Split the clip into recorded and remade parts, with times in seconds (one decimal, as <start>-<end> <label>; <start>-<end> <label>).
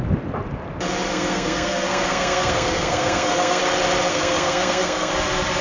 0.0-1.1 recorded; 1.1-3.6 remade; 3.6-4.1 recorded; 4.1-5.1 remade; 5.1-5.6 recorded